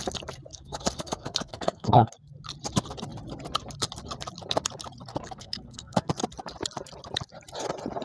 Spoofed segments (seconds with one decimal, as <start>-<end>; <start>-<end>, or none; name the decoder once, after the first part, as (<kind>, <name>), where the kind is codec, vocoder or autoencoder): 0.5-2.1 (codec, SNAC); 5.1-6.1